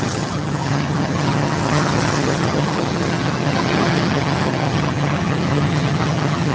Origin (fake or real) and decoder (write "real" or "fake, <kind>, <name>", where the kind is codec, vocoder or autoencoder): fake, vocoder, HiFi-GAN